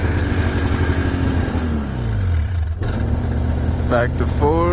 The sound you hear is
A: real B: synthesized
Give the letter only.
A